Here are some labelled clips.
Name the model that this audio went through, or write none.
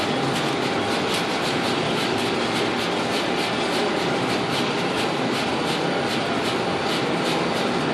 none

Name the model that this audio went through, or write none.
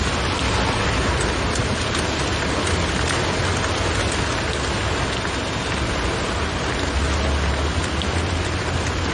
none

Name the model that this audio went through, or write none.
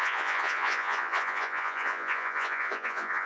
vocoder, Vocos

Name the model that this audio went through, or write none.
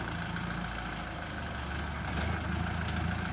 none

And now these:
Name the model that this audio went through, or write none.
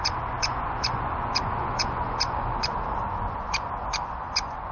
vocoder, Vocos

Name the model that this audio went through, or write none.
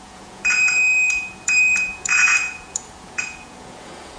vocoder, Vocos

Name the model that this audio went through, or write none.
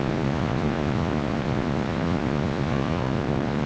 vocoder, Vocos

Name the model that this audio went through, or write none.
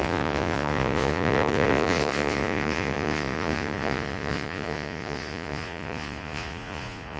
vocoder, Vocos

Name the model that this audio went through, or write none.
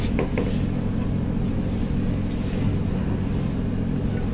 none